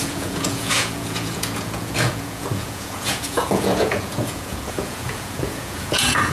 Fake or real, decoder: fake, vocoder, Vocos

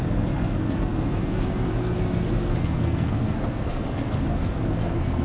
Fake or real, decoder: fake, codec, SNAC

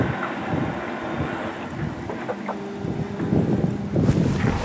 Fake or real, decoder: real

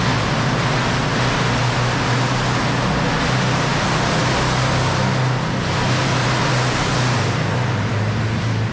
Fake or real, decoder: real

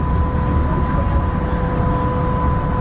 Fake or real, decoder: real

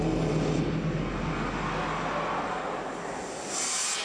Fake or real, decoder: real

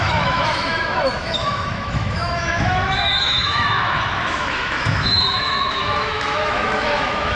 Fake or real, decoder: fake, autoencoder, DAC-VAE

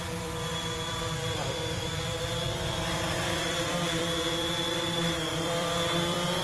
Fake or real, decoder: fake, vocoder, BigVGAN v2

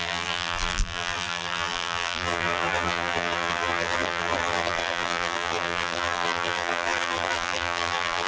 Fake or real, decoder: fake, vocoder, BigVGAN v2